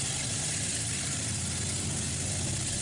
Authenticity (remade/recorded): recorded